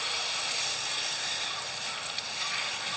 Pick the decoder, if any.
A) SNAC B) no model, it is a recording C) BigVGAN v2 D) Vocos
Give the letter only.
B